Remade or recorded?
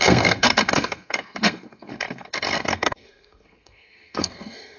remade